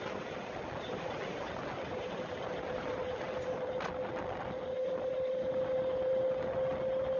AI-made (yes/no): no